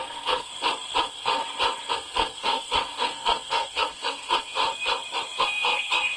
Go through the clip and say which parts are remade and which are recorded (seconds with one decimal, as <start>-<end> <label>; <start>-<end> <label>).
0.0-0.5 remade; 0.5-1.0 recorded; 1.0-1.4 remade; 1.4-1.9 recorded; 1.9-4.6 remade; 4.6-5.4 recorded; 5.4-6.2 remade